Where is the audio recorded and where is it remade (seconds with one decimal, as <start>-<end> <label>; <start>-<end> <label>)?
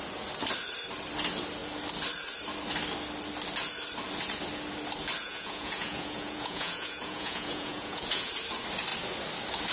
0.0-5.2 recorded; 5.2-8.3 remade; 8.3-9.7 recorded